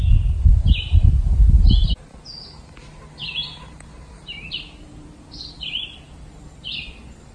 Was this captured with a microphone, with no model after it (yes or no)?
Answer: yes